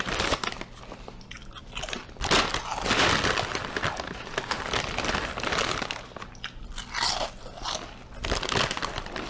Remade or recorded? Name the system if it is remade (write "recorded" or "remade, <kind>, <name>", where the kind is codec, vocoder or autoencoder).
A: recorded